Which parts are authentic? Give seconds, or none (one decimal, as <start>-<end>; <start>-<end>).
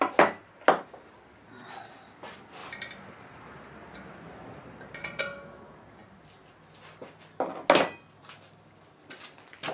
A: 0.0-2.6; 5.2-9.7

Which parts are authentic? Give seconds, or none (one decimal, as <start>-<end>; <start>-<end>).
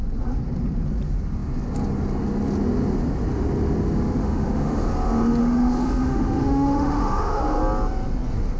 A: 0.0-4.2; 4.9-5.4; 7.6-8.6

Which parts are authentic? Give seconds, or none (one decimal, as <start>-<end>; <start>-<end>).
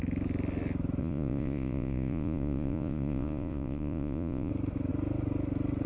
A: 0.0-1.0; 4.5-5.9